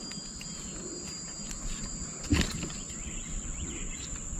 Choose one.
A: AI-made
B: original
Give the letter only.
B